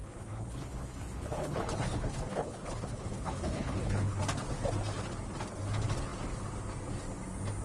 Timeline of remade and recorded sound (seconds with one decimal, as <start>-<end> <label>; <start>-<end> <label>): 0.0-4.2 remade; 4.2-7.6 recorded